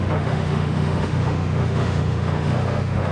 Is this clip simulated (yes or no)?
yes